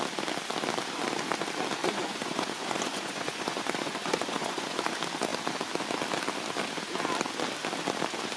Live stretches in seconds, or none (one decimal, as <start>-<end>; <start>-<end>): 0.0-1.8; 4.8-8.4